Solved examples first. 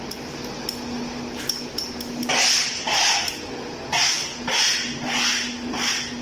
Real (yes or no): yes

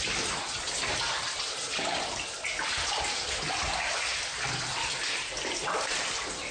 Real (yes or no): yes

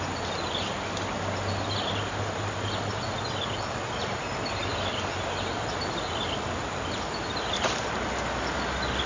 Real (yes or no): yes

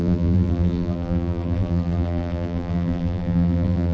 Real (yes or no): no